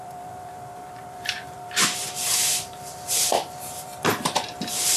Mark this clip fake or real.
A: fake